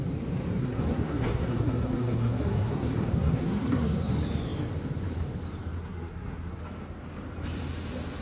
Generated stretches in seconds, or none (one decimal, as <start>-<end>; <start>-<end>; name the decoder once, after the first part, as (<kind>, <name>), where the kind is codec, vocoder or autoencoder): 0.6-4.1 (codec, SNAC); 5.8-6.6